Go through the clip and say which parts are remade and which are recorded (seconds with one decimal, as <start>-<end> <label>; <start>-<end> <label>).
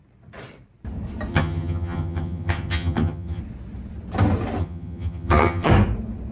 0.0-1.3 recorded; 1.3-3.4 remade; 3.4-4.6 recorded; 4.6-5.7 remade; 5.7-6.3 recorded